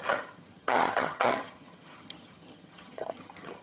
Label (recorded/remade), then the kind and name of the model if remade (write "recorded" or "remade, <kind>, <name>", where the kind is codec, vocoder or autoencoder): remade, vocoder, HiFi-GAN